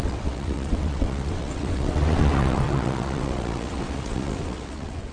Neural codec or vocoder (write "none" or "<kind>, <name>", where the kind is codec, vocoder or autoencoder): vocoder, WaveNeXt